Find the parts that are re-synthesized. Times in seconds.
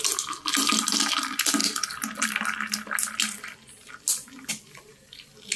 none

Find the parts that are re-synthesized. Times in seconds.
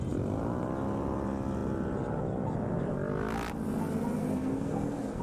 4.2-5.2 (codec, SNAC)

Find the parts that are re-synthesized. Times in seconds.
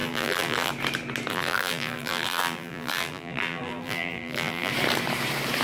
0.0-0.7 (vocoder, BigVGAN v2); 1.3-4.7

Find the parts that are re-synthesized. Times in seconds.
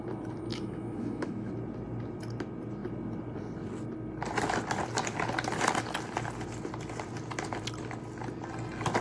0.5-1.5 (autoencoder, DAC-VAE)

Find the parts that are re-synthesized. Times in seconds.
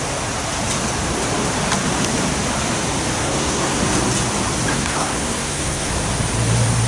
3.2-3.8 (codec, SNAC); 4.7-5.9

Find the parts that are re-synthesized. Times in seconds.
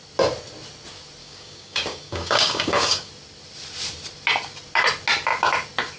1.2-3.1 (codec, DAC)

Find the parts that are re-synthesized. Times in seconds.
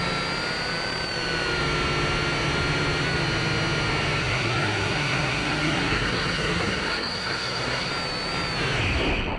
4.2-7.9 (codec, SNAC)